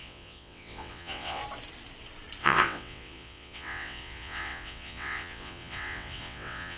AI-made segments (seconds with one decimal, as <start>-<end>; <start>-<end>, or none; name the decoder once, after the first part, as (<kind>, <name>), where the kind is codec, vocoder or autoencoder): 0.0-1.4 (vocoder, WaveNeXt); 2.4-6.8